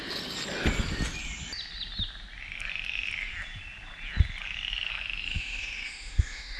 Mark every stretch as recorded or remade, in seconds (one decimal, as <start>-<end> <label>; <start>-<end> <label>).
0.0-5.3 recorded; 5.3-6.6 remade